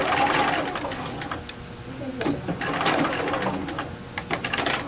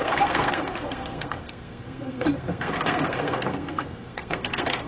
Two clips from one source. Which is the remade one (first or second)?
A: second